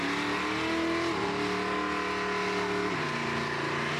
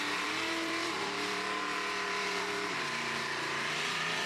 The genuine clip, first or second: first